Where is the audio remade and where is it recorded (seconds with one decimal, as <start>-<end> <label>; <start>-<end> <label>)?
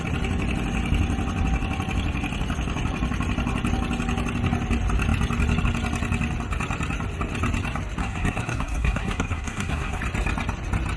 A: 0.0-8.0 recorded; 8.0-10.0 remade; 10.0-11.0 recorded